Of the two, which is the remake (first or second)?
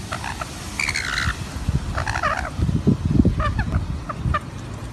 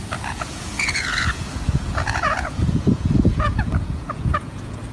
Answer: second